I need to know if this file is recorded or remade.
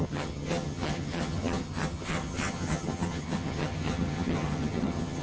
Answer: remade